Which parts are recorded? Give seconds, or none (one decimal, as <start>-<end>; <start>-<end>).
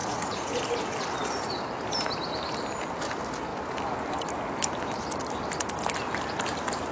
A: 0.6-6.9